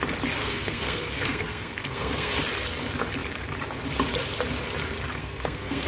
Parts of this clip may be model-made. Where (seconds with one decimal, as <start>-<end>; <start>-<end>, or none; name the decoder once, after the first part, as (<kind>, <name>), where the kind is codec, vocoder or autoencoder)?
0.4-2.3 (codec, SNAC); 5.2-5.9